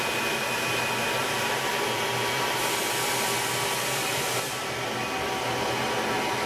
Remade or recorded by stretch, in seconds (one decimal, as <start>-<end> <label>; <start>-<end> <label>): 0.0-1.2 recorded; 1.2-2.6 remade; 2.6-6.5 recorded